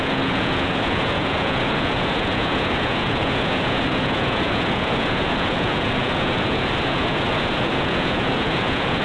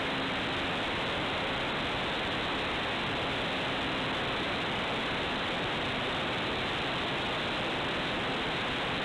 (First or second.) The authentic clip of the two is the second